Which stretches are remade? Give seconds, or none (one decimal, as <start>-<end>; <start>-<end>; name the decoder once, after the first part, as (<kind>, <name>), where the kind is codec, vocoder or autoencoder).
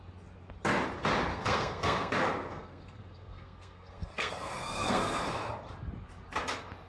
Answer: 1.3-2.1 (codec, SNAC); 2.5-5.5